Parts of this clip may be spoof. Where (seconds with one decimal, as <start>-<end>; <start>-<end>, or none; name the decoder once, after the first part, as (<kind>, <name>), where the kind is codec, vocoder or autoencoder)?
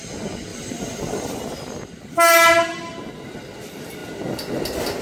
0.5-3.5 (vocoder, BigVGAN v2)